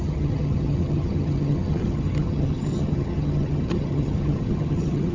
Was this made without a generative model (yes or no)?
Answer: no